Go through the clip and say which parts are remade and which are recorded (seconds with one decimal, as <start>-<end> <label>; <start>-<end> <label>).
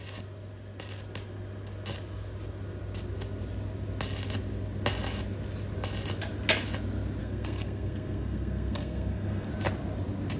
0.0-7.2 recorded; 7.2-9.5 remade; 9.5-10.4 recorded